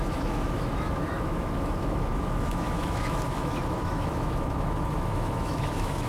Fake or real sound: fake